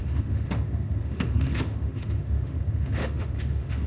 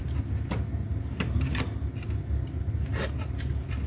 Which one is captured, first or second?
second